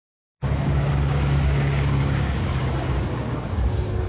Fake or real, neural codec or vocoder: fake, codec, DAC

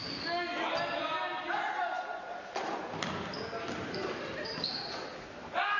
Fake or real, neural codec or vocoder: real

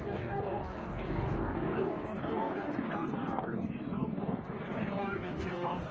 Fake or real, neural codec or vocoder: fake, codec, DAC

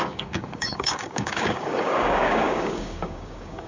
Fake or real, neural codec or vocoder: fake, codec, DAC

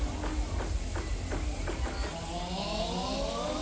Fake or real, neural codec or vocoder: real